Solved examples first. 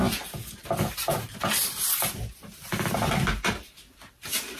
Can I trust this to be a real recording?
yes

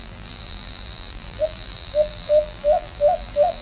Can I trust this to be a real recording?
no